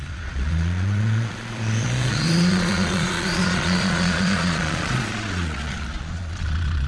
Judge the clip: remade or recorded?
remade